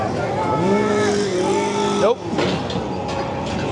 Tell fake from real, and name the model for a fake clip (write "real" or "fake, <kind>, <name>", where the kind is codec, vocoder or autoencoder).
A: real